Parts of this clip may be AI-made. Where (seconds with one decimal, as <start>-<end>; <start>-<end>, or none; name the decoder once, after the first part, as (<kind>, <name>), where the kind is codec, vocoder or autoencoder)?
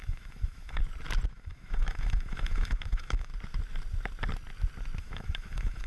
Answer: 0.0-0.8 (autoencoder, DAC-VAE); 1.3-3.3; 5.0-5.9